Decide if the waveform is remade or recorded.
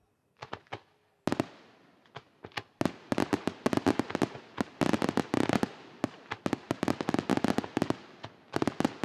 recorded